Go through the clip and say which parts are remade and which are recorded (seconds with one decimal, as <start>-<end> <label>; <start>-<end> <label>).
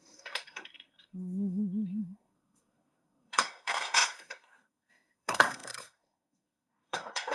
0.0-7.3 remade